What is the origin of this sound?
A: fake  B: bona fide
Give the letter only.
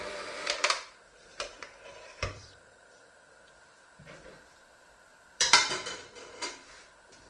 A